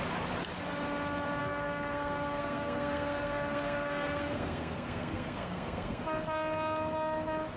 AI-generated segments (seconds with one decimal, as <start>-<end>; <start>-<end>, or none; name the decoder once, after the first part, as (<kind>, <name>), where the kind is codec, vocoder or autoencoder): 1.4-6.0 (codec, SNAC)